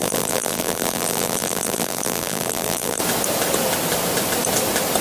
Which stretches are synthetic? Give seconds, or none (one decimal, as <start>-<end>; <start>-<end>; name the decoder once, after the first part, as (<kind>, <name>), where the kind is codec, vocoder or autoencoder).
0.0-3.0 (vocoder, BigVGAN v2)